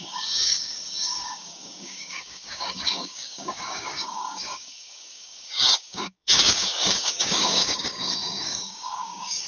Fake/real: fake